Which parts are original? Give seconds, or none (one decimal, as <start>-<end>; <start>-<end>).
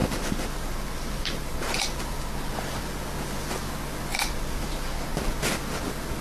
2.5-4.1; 5.4-6.2